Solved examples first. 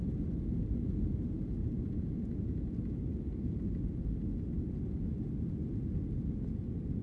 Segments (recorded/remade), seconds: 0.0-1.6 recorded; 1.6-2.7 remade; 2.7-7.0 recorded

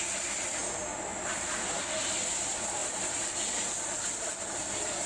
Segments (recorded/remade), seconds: 0.0-1.1 recorded; 1.1-1.6 remade; 1.6-2.8 recorded; 2.8-4.3 remade; 4.3-5.1 recorded